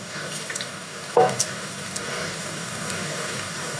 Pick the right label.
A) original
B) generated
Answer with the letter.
B